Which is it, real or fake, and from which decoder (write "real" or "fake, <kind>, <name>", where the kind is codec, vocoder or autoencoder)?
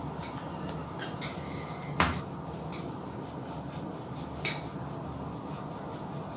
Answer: real